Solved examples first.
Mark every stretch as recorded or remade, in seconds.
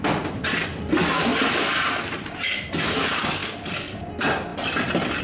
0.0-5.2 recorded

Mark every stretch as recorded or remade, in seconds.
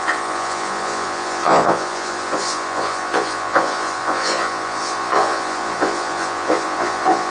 0.0-7.3 remade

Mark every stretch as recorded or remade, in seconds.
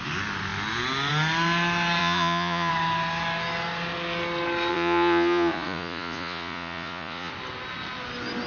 0.0-2.0 recorded; 2.0-2.7 remade; 2.7-4.7 recorded; 4.7-7.3 remade; 7.3-8.5 recorded